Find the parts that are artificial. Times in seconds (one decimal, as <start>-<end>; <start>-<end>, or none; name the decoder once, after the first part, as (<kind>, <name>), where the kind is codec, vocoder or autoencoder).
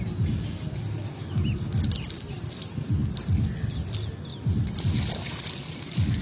none